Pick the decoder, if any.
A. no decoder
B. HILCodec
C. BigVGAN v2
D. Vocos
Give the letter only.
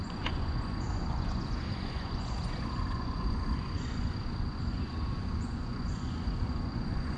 D